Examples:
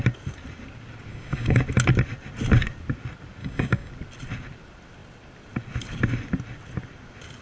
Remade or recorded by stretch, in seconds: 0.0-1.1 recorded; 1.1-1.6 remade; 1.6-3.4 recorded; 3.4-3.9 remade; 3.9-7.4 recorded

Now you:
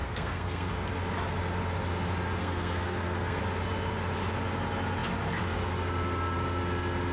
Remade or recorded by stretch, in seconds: 0.0-0.7 remade; 0.7-2.4 recorded; 2.4-3.4 remade; 3.4-7.1 recorded

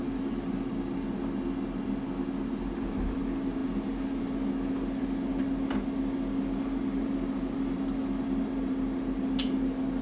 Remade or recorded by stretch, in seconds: 0.0-10.0 recorded

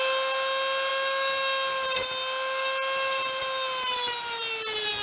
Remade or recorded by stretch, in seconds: 0.0-5.0 recorded

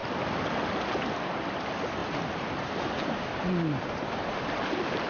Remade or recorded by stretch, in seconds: 0.0-2.0 recorded; 2.0-5.1 remade

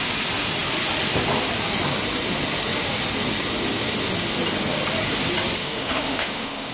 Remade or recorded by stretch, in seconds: 0.0-5.6 recorded; 5.6-6.7 remade